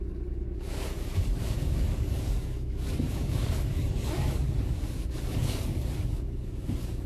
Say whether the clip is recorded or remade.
remade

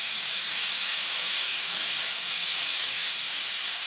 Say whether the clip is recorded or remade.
remade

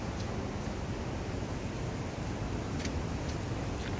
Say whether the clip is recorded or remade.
recorded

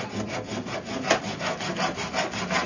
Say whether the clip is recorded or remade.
recorded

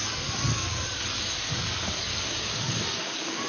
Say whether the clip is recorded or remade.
remade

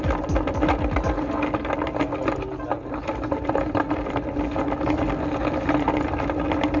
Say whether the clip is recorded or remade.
recorded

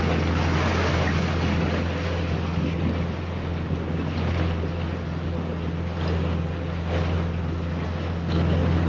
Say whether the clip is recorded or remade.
recorded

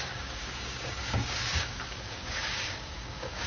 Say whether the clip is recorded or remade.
remade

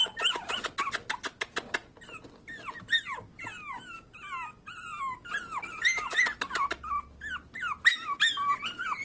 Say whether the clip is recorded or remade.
recorded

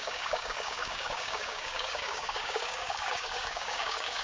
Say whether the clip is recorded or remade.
remade